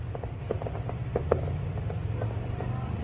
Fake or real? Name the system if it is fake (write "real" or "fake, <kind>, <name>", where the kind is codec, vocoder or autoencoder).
real